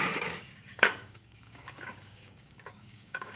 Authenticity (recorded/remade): remade